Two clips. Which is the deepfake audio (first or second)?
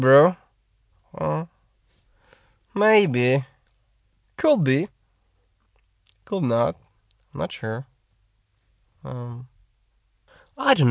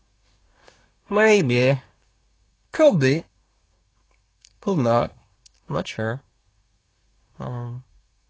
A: second